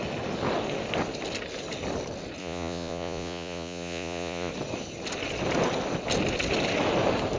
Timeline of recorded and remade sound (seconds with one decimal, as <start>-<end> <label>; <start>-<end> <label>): 0.0-2.4 recorded; 2.4-4.5 remade; 4.5-7.4 recorded